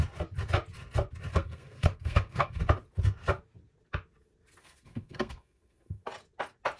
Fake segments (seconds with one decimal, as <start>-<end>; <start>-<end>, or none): 1.3-2.6; 4.6-6.0